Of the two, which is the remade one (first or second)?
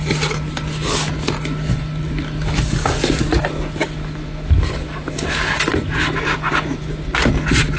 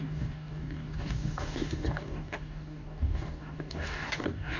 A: second